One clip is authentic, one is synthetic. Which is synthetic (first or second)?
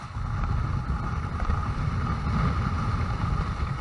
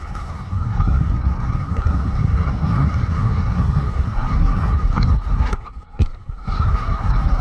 second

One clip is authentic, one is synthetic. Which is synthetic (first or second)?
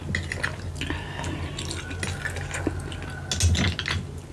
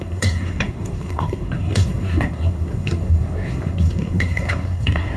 second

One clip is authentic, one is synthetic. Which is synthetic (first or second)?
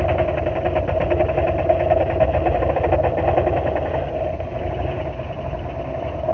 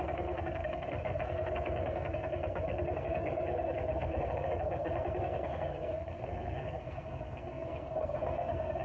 second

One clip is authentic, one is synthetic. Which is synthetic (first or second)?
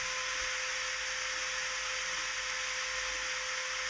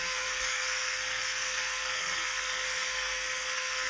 second